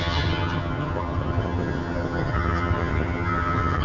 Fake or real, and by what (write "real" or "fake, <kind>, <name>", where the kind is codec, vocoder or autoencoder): fake, vocoder, HiFi-GAN